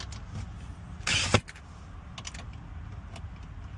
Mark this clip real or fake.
real